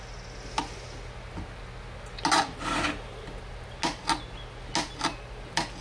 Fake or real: real